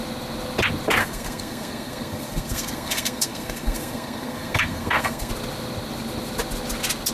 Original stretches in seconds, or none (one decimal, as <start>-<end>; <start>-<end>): 0.0-1.0; 5.3-7.1